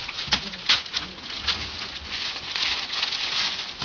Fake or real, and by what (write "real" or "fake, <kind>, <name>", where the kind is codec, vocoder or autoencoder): fake, vocoder, Vocos